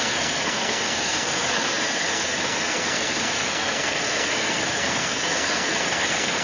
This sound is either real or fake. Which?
fake